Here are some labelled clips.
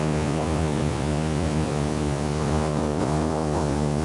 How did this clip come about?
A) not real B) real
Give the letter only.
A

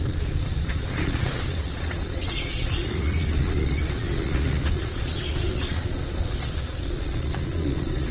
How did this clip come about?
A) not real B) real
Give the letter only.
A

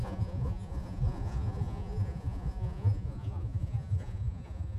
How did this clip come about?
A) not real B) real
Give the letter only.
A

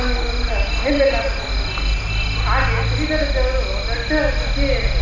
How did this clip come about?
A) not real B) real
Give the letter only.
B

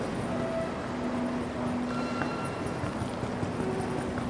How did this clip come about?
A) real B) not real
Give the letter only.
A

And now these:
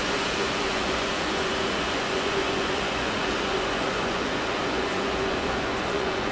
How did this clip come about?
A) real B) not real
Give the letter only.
B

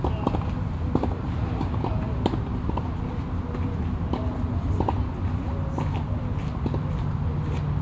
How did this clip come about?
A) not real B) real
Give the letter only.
B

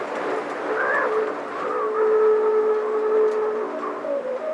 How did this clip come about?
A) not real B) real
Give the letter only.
B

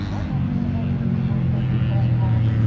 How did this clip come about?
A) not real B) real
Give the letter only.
B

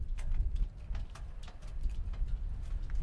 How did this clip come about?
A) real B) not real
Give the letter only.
A